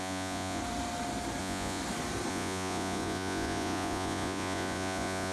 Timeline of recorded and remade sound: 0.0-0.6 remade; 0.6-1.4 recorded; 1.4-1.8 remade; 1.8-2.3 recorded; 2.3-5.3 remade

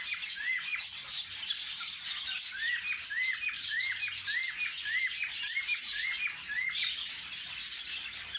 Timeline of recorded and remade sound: 0.0-8.4 recorded

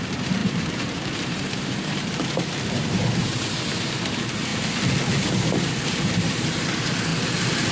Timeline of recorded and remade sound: 0.0-4.5 remade; 4.5-5.1 recorded; 5.1-7.1 remade; 7.1-7.7 recorded

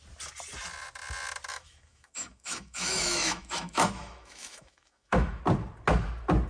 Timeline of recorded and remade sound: 0.0-1.5 recorded; 1.5-5.4 remade; 5.4-6.5 recorded

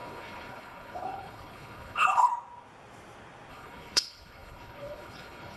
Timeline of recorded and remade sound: 0.0-2.3 remade; 2.3-3.5 recorded; 3.5-5.6 remade

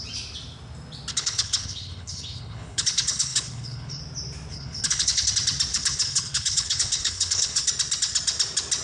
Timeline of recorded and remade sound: 0.0-1.1 recorded; 1.1-4.0 remade; 4.0-4.5 recorded; 4.5-5.3 remade; 5.3-5.7 recorded; 5.7-7.7 remade; 7.7-8.8 recorded

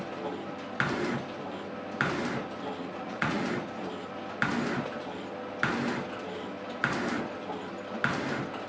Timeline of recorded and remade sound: 0.0-2.8 recorded; 2.8-3.4 remade; 3.4-8.7 recorded